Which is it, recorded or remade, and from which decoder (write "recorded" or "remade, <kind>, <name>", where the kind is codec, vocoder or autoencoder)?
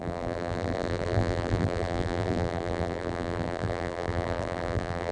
remade, vocoder, BigVGAN v2